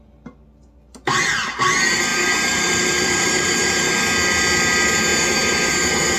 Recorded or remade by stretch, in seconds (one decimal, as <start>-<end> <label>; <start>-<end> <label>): 0.0-2.1 recorded; 2.1-4.0 remade; 4.0-6.2 recorded